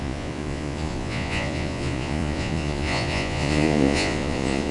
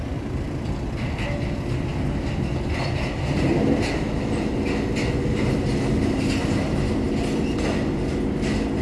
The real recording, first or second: second